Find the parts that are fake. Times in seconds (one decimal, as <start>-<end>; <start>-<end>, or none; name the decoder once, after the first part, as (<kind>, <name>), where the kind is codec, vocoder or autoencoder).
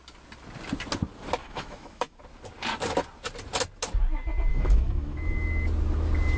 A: 1.4-2.2 (autoencoder, DAC-VAE); 4.5-5.5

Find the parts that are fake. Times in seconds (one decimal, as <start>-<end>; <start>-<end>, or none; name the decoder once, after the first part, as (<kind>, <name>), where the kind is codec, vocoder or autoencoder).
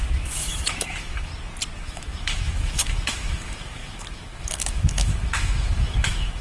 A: 0.0-1.3 (autoencoder, DAC-VAE); 1.8-6.4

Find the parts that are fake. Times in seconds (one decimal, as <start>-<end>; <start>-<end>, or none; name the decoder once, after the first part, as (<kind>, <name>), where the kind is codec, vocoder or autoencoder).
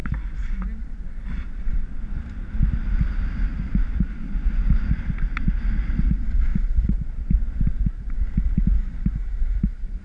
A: none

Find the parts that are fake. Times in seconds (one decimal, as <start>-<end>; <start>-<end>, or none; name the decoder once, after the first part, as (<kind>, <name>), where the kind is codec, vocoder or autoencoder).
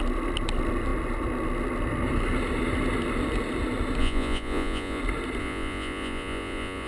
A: 4.0-5.0 (vocoder, Vocos); 5.4-6.9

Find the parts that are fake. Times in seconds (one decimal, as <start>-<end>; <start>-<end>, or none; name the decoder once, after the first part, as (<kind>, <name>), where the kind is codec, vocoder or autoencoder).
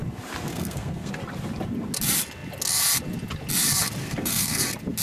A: 0.5-1.1 (codec, SNAC); 4.0-4.6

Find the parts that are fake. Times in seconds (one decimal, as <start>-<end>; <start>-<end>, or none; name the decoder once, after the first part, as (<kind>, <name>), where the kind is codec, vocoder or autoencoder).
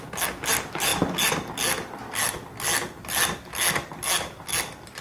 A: none